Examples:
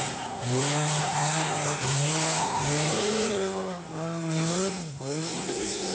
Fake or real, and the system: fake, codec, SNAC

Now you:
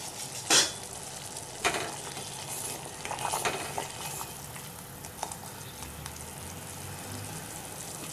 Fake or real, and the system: real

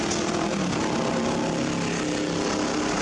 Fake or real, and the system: real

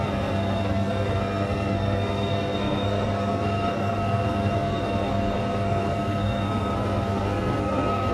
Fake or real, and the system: fake, codec, SNAC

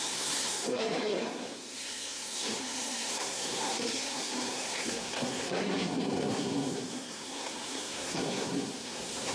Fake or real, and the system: fake, codec, SNAC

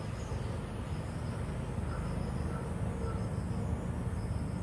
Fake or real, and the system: real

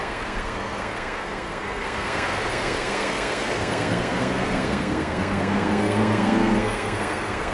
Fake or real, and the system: fake, codec, SNAC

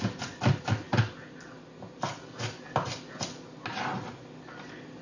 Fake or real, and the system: real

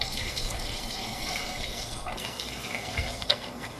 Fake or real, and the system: fake, codec, SNAC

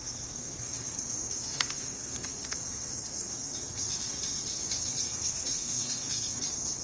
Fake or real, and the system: fake, codec, SNAC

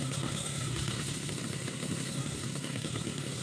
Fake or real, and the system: fake, codec, SNAC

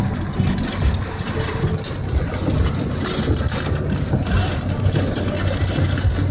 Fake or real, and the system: real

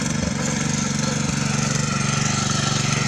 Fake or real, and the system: real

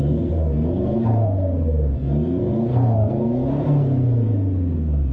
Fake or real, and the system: fake, codec, SNAC